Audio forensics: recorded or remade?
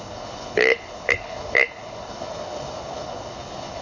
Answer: remade